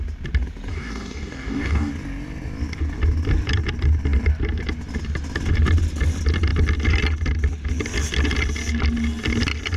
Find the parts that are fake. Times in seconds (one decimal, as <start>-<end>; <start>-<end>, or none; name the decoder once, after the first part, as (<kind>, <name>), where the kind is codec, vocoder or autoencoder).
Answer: 0.7-1.9 (codec, DAC)